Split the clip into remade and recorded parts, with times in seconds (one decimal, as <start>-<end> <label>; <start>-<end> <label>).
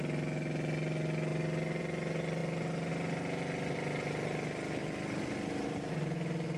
0.0-6.6 recorded